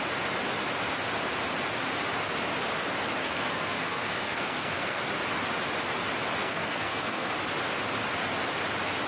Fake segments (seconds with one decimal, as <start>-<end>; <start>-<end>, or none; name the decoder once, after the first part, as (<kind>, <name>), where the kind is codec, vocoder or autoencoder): 3.2-5.0 (codec, SNAC); 6.4-7.3